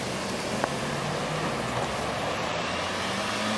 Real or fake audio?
real